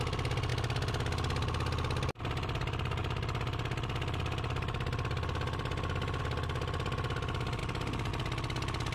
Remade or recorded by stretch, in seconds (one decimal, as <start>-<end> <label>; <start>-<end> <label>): 0.0-8.9 recorded